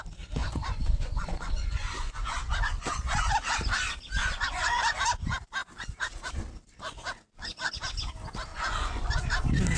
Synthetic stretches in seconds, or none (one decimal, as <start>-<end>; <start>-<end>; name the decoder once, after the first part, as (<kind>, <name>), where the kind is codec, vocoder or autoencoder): 0.4-3.3 (vocoder, Vocos); 4.2-4.8; 8.5-9.2